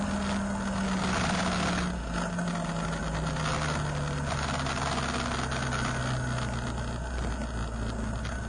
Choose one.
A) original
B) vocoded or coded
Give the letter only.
A